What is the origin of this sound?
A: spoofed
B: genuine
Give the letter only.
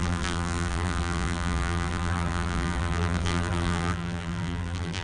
A